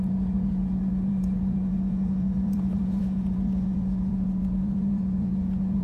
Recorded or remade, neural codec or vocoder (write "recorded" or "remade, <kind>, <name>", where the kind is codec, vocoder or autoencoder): remade, vocoder, Vocos